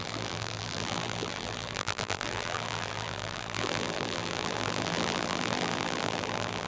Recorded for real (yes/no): no